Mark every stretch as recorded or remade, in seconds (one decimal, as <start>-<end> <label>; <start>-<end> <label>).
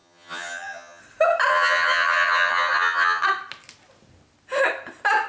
0.0-1.0 remade; 1.0-1.5 recorded; 1.5-3.2 remade; 3.2-5.3 recorded